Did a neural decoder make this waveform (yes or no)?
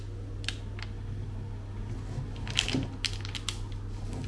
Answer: no